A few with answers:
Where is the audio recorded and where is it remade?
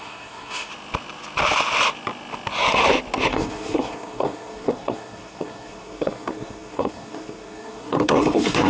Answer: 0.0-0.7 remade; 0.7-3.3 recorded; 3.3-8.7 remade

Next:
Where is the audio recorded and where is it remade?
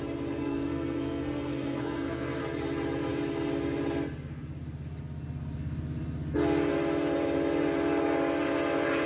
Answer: 0.0-0.4 recorded; 0.4-2.4 remade; 2.4-9.1 recorded